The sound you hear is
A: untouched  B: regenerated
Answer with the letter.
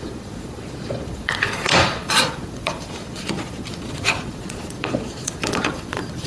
B